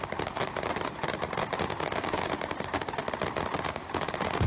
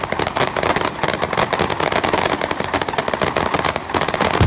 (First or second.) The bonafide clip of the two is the second